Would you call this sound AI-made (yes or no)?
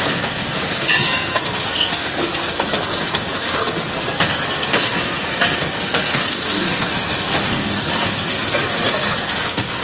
yes